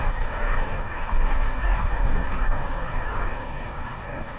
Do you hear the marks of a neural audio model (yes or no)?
yes